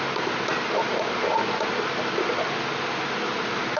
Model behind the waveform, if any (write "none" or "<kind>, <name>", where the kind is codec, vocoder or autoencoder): none